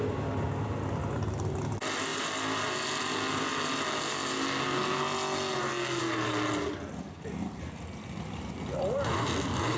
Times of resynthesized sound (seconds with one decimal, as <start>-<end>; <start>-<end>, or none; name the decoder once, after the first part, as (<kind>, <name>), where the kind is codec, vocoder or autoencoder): none